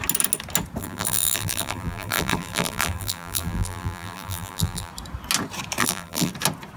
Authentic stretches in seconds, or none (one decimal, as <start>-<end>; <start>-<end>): 0.0-0.8; 4.9-5.8; 6.3-6.8